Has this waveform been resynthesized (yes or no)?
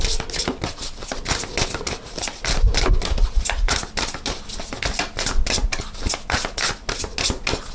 no